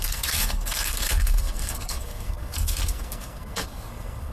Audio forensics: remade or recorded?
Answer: remade